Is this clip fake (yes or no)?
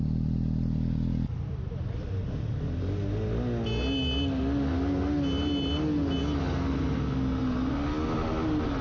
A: no